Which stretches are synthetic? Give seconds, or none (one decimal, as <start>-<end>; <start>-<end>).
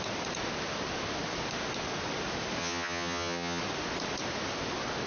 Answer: 2.6-3.6